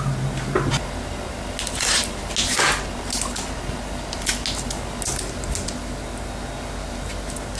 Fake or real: real